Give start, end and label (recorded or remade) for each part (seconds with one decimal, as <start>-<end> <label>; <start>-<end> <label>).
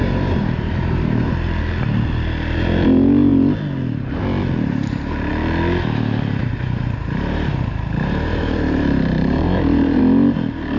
0.0-1.6 remade; 1.6-6.4 recorded; 6.4-10.0 remade; 10.0-10.8 recorded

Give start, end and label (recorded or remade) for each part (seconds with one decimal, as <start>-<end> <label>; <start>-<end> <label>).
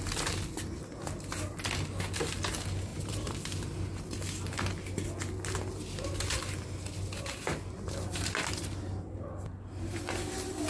0.0-2.9 recorded; 2.9-3.4 remade; 3.4-10.7 recorded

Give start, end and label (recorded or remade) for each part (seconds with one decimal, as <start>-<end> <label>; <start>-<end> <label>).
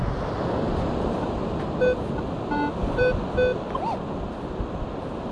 0.0-5.3 recorded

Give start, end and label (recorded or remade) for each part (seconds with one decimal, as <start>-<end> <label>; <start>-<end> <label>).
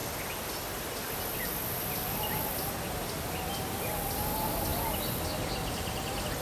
0.0-6.4 recorded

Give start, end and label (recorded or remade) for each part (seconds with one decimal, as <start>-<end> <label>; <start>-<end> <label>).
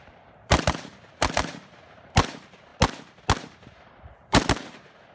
0.0-2.7 remade; 2.7-3.4 recorded; 3.4-5.1 remade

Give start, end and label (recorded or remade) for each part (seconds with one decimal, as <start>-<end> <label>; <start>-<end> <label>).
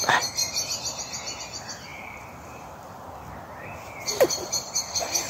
0.0-0.4 recorded; 0.4-1.4 remade; 1.4-1.9 recorded; 1.9-3.1 remade; 3.1-5.3 recorded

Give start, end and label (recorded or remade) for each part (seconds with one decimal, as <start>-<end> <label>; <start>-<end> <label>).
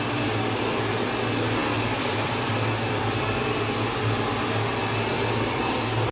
0.0-1.6 recorded; 1.6-3.5 remade; 3.5-6.1 recorded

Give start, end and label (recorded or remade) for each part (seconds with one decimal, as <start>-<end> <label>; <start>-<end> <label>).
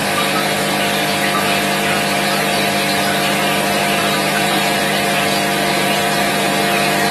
0.0-4.0 recorded; 4.0-4.8 remade; 4.8-5.7 recorded; 5.7-6.3 remade; 6.3-7.1 recorded